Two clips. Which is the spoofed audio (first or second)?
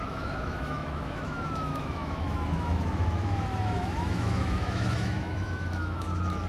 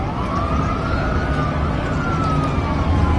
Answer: first